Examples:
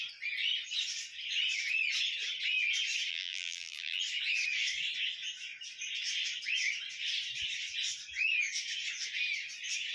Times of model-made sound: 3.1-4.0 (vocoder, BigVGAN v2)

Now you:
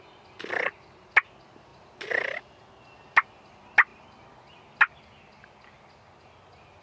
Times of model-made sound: 1.7-2.6 (vocoder, BigVGAN v2); 3.9-5.0

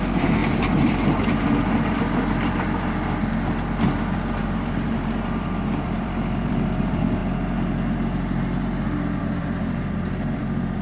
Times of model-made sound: 0.0-7.2 (vocoder, BigVGAN v2); 9.2-10.8

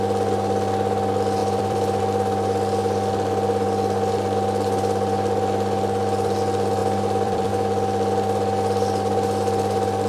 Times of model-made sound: 1.4-2.0 (vocoder, BigVGAN v2); 6.8-7.5